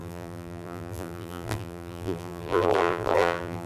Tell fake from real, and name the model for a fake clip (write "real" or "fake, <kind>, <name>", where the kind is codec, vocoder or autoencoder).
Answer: fake, vocoder, BigVGAN v2